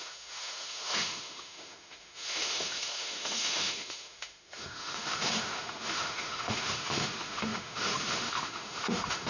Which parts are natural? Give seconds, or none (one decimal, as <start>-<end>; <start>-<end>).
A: none